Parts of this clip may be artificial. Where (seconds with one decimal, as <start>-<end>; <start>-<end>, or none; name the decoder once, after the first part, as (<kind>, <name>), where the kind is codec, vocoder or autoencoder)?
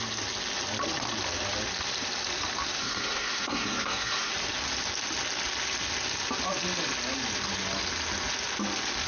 2.8-4.3 (codec, SNAC)